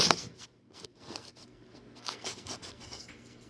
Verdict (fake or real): fake